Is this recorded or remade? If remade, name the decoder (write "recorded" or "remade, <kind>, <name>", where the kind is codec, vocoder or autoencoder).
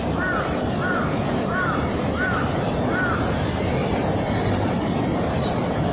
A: remade, vocoder, BigVGAN v2